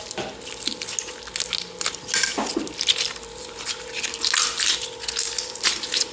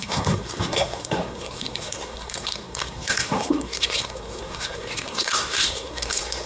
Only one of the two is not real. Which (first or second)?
second